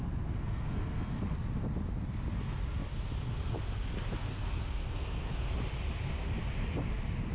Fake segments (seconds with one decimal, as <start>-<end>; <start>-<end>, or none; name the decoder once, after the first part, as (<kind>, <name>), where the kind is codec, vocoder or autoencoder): 0.0-1.2 (codec, SNAC); 4.2-5.6